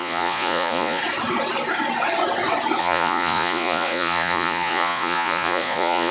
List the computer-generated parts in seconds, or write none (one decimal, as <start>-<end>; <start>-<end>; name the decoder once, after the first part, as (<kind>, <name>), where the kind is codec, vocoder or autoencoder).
0.0-1.0 (vocoder, Vocos); 2.8-6.1

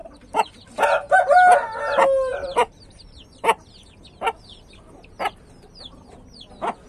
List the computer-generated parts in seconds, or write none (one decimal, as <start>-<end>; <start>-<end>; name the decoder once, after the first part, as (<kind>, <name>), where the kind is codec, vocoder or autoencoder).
0.0-0.7 (vocoder, BigVGAN v2); 2.3-5.7

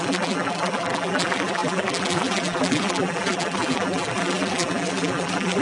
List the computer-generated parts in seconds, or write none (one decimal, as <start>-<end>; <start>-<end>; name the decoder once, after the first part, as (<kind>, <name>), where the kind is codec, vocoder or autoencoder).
0.0-5.6 (vocoder, BigVGAN v2)

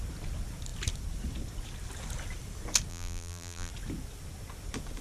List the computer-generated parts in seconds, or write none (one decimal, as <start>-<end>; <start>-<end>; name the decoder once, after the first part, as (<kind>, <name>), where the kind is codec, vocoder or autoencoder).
2.9-3.7 (vocoder, BigVGAN v2)

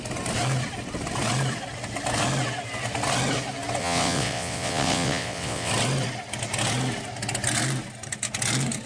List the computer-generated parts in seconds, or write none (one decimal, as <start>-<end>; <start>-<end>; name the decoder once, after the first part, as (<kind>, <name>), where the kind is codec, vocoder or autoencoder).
3.8-5.7 (vocoder, WaveNeXt)

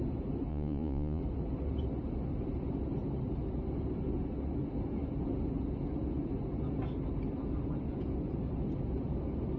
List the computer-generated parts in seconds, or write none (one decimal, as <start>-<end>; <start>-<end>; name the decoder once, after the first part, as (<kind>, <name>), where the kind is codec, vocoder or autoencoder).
0.5-1.2 (vocoder, Vocos)

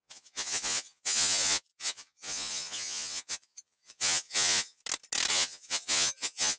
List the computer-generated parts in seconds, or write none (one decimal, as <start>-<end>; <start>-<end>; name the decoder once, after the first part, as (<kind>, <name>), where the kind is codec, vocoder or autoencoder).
0.0-4.8 (vocoder, Vocos); 5.3-6.6